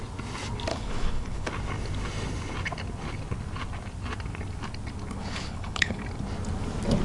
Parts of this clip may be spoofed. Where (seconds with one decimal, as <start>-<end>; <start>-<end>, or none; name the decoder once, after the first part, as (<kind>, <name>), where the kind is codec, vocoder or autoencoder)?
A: 0.7-1.5 (codec, HILCodec); 5.2-6.0